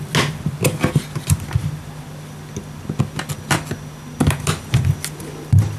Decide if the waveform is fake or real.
real